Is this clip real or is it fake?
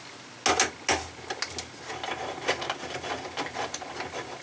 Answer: real